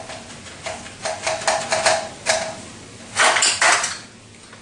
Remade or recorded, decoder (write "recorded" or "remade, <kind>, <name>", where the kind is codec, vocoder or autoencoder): recorded